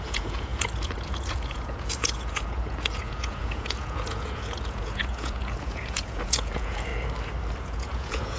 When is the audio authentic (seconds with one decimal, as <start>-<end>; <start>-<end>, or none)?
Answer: 6.9-7.6